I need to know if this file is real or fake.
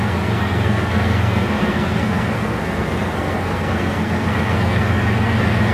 fake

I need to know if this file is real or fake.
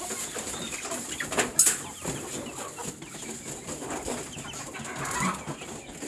real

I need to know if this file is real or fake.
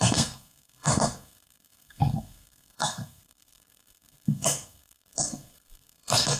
fake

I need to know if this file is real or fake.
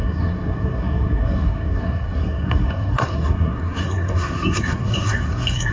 fake